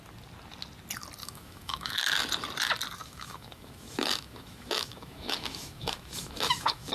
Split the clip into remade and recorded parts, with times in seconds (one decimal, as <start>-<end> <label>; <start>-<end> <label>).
0.0-1.2 recorded; 1.2-2.0 remade; 2.0-3.0 recorded; 3.0-6.9 remade